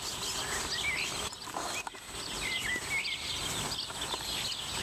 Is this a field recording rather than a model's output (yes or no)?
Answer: yes